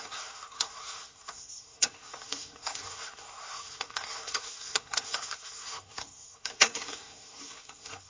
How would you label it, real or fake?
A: fake